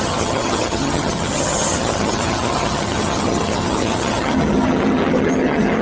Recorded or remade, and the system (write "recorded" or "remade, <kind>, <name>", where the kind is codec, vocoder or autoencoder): remade, vocoder, HiFi-GAN